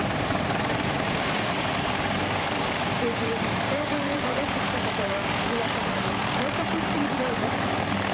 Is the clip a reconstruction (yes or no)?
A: yes